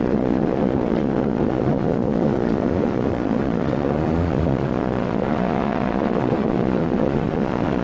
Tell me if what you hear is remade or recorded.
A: remade